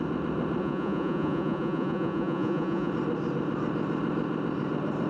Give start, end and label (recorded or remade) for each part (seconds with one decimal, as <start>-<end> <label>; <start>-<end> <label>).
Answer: 0.0-0.6 recorded; 0.6-2.9 remade; 2.9-5.1 recorded